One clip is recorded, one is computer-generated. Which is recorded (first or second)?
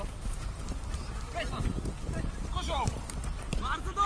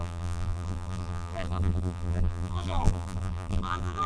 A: first